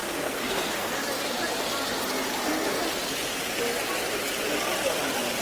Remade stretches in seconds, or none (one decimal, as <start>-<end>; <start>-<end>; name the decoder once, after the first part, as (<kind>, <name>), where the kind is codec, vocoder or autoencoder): 0.0-0.9 (codec, SNAC)